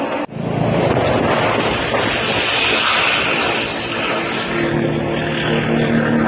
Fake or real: real